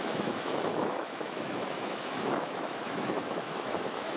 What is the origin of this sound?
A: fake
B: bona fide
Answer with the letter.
A